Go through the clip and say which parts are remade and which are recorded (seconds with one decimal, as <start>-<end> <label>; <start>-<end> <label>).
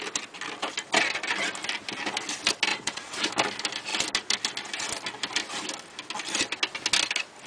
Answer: 0.0-2.7 recorded; 2.7-3.3 remade; 3.3-7.5 recorded